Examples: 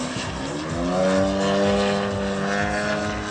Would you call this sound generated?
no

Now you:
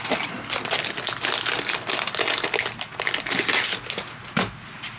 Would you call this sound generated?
no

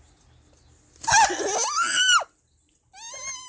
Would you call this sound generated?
no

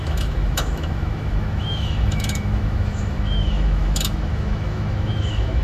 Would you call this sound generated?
yes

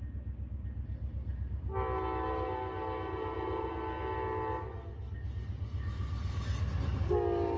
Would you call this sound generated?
no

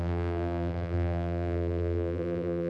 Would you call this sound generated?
yes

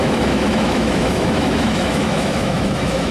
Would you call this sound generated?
yes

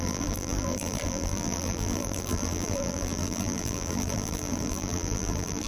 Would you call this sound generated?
yes